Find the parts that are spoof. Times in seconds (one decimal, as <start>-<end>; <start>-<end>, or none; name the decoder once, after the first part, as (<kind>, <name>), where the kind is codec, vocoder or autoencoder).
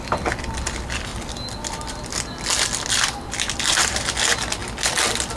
1.1-4.0 (vocoder, BigVGAN v2)